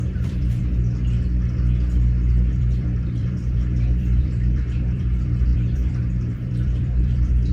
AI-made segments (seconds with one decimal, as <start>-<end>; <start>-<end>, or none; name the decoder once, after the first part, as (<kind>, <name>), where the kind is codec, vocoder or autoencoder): 0.0-0.6 (vocoder, BigVGAN v2); 2.5-7.5